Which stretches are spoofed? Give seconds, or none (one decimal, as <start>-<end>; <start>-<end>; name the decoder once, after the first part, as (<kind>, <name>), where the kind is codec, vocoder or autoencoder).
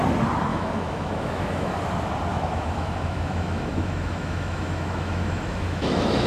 0.5-1.8 (autoencoder, DAC-VAE); 2.3-6.3